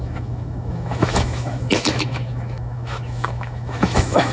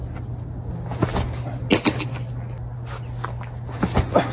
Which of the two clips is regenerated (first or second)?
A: first